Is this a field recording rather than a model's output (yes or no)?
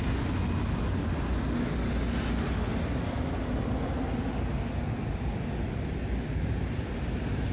yes